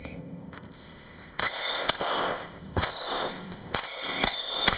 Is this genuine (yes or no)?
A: no